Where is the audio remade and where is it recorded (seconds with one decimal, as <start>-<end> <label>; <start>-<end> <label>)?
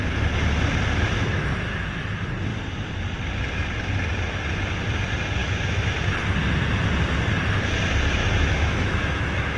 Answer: 0.0-5.4 recorded; 5.4-6.0 remade; 6.0-8.2 recorded; 8.2-9.6 remade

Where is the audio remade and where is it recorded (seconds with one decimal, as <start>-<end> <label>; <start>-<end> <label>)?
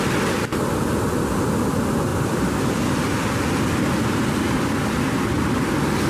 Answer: 0.0-6.1 recorded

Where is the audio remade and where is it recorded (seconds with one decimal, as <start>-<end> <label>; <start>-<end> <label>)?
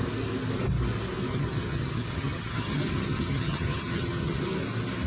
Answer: 0.0-1.3 recorded; 1.3-4.4 remade; 4.4-5.1 recorded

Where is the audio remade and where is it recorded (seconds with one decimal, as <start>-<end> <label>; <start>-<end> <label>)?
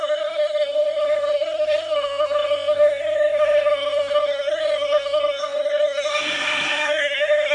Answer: 0.0-7.5 remade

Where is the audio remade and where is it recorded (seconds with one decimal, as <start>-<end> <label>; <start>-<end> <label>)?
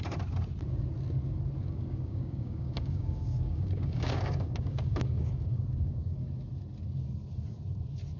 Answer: 0.0-1.6 recorded; 1.6-6.3 remade; 6.3-8.2 recorded